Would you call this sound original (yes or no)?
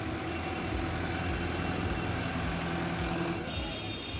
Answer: yes